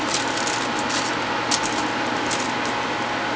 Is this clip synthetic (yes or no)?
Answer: no